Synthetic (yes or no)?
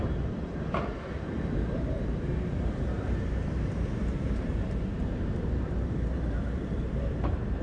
yes